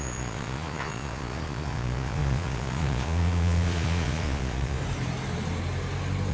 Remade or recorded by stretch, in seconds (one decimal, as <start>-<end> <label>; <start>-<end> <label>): 0.0-4.8 remade; 4.8-6.3 recorded